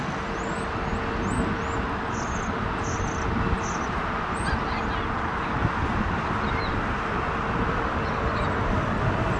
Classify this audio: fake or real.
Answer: real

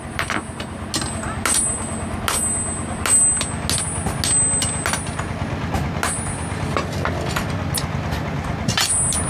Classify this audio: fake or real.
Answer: real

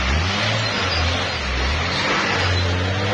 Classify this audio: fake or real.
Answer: real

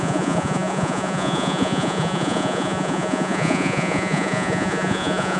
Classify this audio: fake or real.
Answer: fake